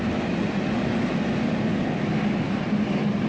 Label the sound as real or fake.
real